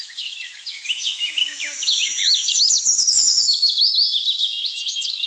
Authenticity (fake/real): fake